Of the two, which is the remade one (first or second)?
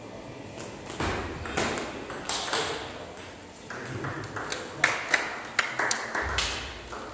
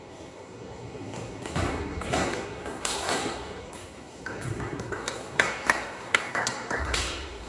second